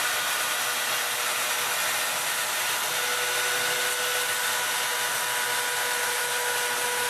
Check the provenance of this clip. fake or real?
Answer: real